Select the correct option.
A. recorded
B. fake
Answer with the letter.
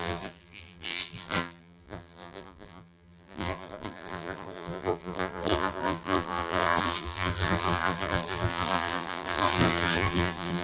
B